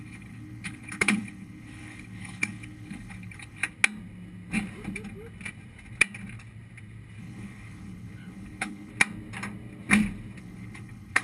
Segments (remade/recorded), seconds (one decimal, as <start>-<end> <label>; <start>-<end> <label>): 0.0-3.6 remade; 3.6-7.2 recorded; 7.2-8.9 remade; 8.9-10.4 recorded; 10.4-11.2 remade